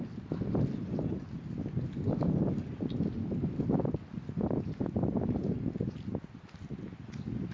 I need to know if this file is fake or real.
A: real